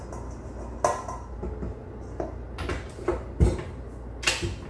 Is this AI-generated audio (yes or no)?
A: no